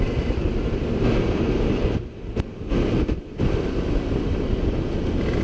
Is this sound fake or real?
real